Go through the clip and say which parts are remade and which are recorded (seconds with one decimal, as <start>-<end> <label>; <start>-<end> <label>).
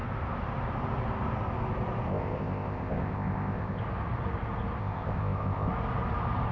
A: 0.0-2.1 recorded; 2.1-3.8 remade; 3.8-4.8 recorded; 4.8-5.7 remade; 5.7-6.5 recorded